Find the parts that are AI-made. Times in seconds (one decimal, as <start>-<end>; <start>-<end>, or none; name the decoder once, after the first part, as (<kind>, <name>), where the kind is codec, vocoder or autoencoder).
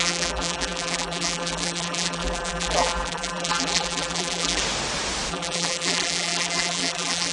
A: 0.0-4.6 (vocoder, BigVGAN v2); 5.3-7.3